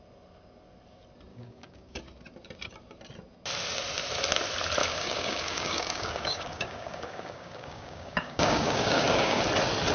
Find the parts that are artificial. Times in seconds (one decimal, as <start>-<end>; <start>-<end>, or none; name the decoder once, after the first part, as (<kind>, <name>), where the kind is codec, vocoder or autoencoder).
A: 1.3-2.0 (codec, DAC); 4.8-9.4